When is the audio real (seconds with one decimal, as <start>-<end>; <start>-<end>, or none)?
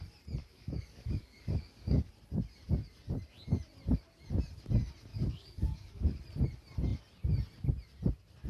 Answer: 0.0-0.4; 2.1-5.1; 6.2-8.5